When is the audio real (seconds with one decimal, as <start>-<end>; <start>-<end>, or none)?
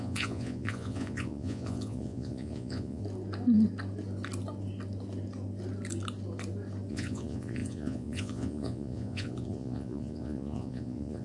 3.0-6.9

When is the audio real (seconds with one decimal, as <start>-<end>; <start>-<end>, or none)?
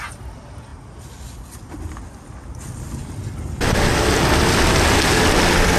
0.0-5.8